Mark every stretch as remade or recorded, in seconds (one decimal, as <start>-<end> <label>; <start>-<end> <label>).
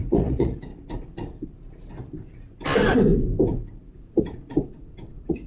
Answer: 0.0-0.7 remade; 0.7-4.0 recorded; 4.0-5.5 remade